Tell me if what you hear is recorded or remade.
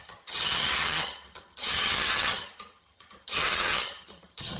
remade